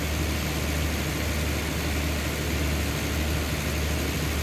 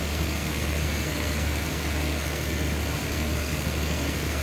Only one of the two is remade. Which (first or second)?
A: second